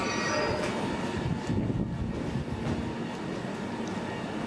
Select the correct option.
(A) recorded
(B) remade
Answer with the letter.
A